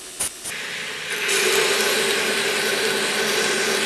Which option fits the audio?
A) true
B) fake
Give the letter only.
A